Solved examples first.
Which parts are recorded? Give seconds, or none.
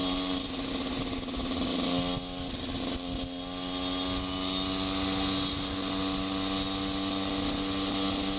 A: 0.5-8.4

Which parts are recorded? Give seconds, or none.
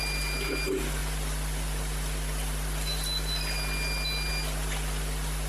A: 0.0-5.5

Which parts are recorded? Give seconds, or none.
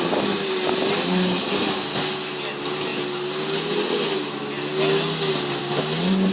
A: 0.0-6.3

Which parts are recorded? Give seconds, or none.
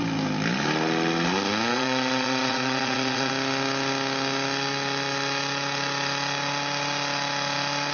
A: 0.0-1.7; 3.3-7.9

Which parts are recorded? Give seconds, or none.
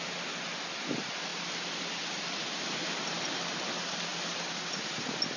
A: 0.0-5.4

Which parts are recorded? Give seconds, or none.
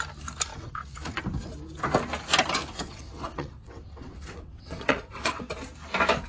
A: 0.0-0.5; 1.2-2.7; 5.4-6.3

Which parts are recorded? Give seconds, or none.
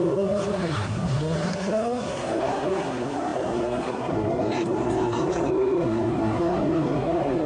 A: none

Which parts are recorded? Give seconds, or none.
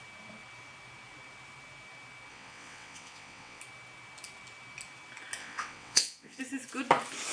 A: 0.0-2.3; 3.6-5.4; 6.4-7.3